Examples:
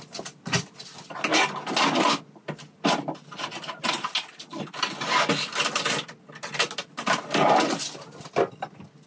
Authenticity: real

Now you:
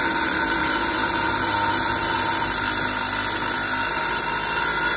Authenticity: real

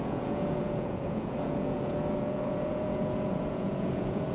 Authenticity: fake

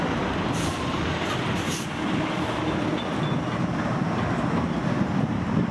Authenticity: real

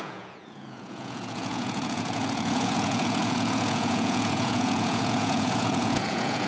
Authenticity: fake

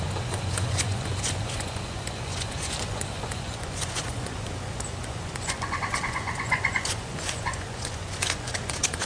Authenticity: fake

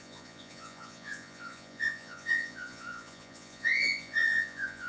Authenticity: fake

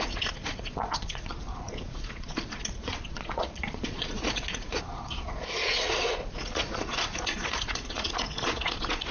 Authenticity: fake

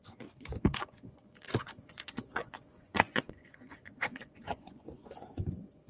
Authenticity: fake